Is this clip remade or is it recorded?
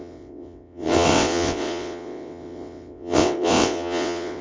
remade